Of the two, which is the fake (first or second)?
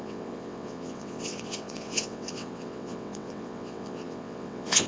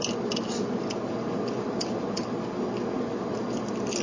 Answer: first